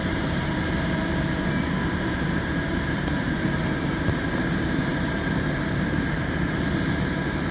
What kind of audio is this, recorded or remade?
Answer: remade